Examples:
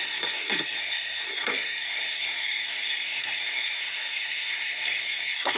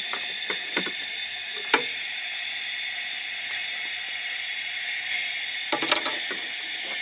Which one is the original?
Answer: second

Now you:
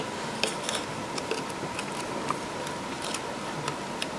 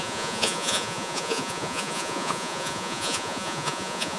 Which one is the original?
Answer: first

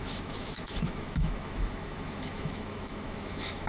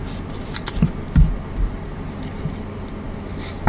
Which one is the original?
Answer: second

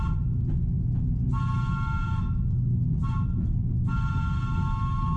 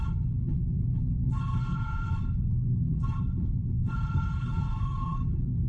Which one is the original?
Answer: first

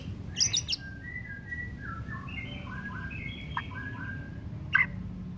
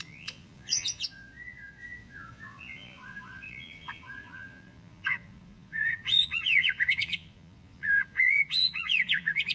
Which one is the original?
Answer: first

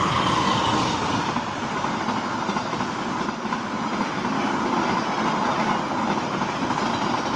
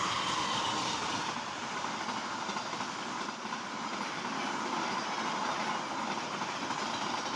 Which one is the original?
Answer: first